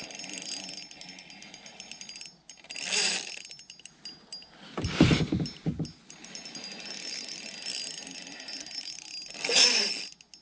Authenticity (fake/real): real